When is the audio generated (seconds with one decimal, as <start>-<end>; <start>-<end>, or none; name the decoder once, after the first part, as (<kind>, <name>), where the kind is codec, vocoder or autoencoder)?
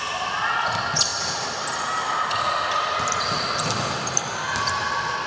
none